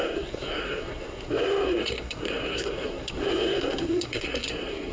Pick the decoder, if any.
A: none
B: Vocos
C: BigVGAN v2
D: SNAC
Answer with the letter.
D